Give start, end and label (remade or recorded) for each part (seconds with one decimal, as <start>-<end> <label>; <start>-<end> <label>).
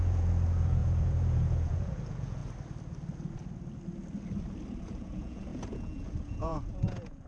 0.0-2.4 remade; 2.4-4.8 recorded; 4.8-7.3 remade